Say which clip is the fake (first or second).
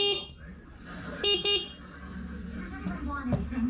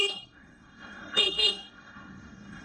second